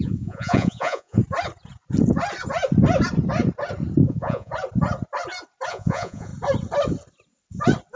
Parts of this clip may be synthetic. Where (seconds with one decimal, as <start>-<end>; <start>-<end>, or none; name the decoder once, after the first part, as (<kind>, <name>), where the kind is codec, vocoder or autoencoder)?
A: 0.0-1.2 (vocoder, Vocos); 4.1-4.5; 5.7-6.3